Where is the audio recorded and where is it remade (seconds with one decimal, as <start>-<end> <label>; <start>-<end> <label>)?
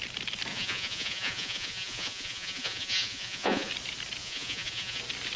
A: 0.0-0.5 recorded; 0.5-3.7 remade; 3.7-4.2 recorded; 4.2-5.0 remade; 5.0-5.4 recorded